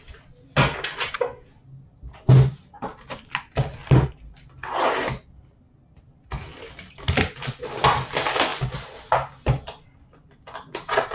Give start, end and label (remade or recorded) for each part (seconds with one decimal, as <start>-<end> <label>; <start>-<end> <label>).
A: 0.0-11.1 recorded